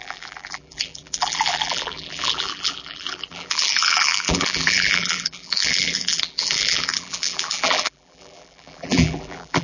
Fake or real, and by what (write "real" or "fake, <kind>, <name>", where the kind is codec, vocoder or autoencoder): fake, vocoder, BigVGAN v2